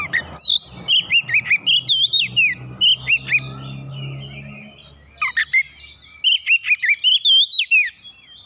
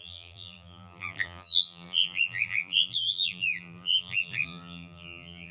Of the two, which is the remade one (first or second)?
second